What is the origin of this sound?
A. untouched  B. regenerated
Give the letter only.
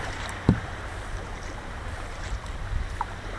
B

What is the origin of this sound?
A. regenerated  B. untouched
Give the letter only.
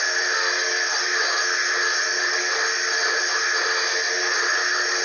B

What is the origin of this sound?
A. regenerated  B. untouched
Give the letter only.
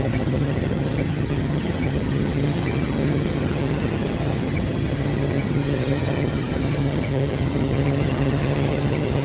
A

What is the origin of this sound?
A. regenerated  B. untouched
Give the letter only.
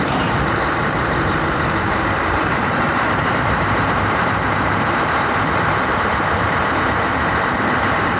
A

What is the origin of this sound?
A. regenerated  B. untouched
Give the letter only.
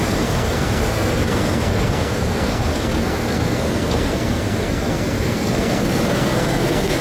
A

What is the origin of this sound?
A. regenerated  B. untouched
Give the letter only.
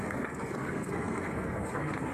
A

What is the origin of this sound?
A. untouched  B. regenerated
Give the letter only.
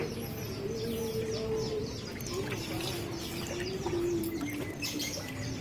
A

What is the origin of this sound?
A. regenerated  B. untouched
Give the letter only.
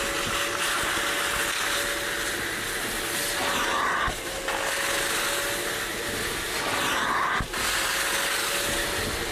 B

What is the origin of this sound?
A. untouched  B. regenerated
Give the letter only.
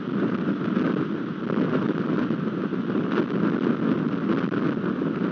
A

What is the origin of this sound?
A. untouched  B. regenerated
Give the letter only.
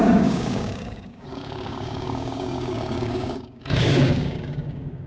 B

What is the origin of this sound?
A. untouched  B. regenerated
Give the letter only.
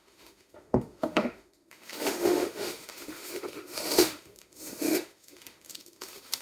B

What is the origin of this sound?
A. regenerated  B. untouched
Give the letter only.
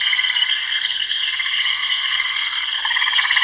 A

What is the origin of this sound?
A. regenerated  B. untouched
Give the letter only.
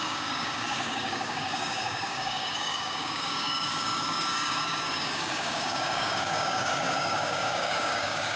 A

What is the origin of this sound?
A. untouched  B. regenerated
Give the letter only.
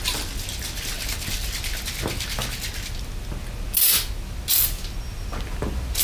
A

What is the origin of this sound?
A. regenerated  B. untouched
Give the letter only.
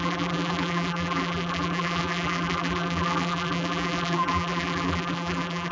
A